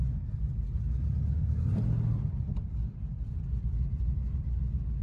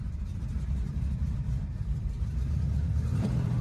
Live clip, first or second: first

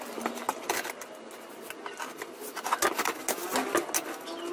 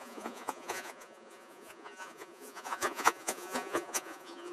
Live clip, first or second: first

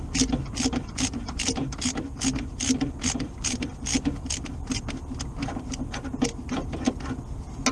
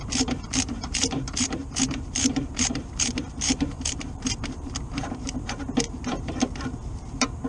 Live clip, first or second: first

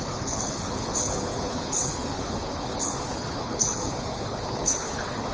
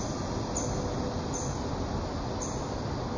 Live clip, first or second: second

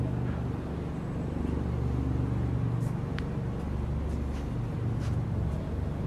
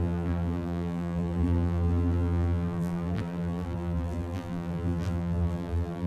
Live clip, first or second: first